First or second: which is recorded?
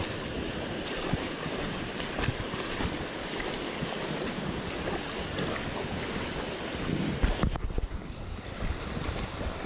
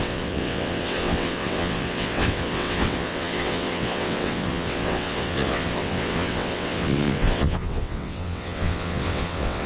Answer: first